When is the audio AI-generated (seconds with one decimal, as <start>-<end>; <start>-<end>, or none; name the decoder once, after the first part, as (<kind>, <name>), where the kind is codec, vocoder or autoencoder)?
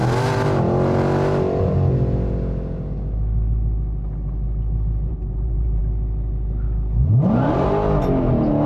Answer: 5.1-5.8 (vocoder, BigVGAN v2)